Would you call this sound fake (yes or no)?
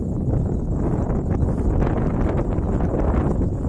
no